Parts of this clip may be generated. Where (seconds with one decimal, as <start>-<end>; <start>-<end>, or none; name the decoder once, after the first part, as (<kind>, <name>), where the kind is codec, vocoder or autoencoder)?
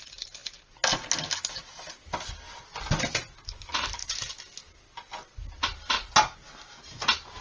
none